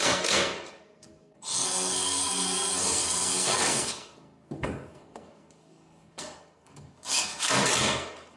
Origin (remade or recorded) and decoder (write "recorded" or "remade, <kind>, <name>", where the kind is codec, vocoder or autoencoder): remade, codec, SNAC